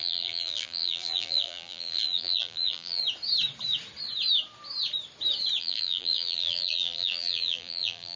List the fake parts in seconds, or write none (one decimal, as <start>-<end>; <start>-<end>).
0.0-3.0; 5.6-8.2